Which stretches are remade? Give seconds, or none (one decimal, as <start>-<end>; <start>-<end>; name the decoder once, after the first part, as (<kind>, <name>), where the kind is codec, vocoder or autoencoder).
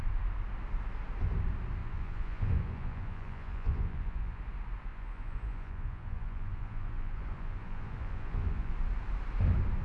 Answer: 1.8-4.4 (vocoder, Vocos); 4.9-8.7